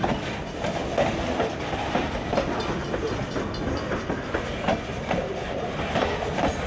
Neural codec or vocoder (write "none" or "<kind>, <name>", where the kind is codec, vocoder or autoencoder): none